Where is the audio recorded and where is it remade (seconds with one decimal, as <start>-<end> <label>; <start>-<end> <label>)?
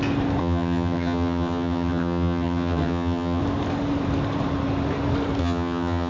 0.0-0.4 recorded; 0.4-3.4 remade; 3.4-5.4 recorded; 5.4-6.1 remade